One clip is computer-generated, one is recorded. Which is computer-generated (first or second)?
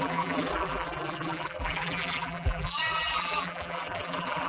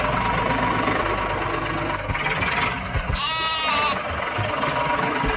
first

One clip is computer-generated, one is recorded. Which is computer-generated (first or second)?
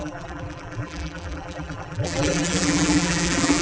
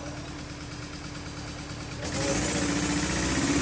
first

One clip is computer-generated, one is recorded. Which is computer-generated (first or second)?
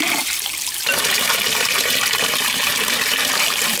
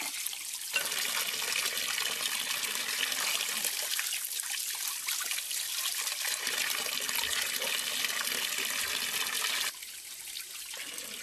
first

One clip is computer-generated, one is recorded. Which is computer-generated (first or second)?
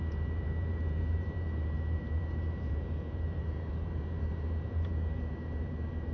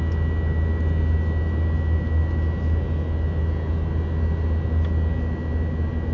first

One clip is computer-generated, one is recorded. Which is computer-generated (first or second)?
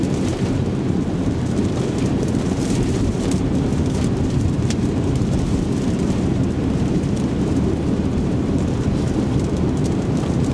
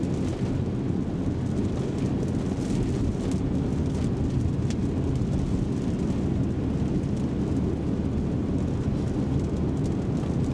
first